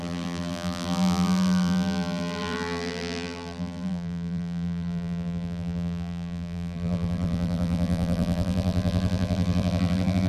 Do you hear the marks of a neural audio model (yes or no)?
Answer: yes